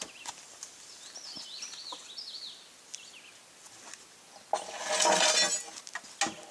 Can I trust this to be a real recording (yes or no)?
yes